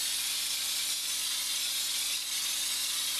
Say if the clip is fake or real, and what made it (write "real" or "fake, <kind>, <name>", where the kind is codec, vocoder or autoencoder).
real